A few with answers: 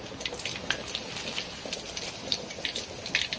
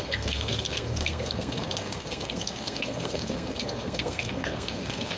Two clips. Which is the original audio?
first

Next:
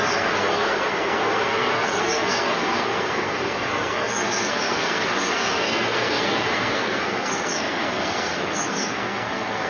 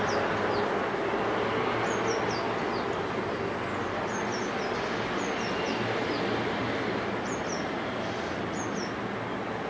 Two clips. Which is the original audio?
second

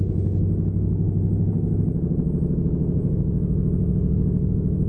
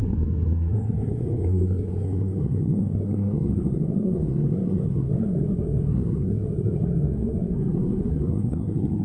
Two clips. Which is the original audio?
first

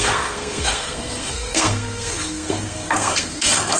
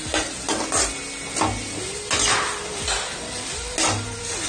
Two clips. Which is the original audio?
second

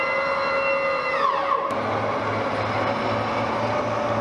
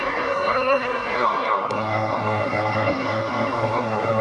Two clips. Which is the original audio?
first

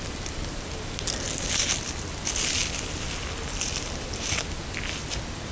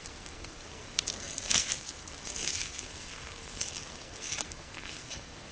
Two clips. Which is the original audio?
first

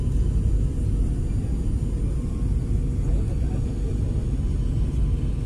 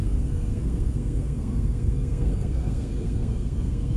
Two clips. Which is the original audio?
first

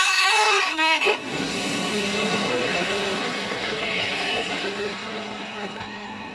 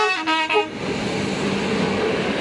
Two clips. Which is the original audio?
second